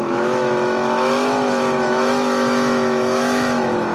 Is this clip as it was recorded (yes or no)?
no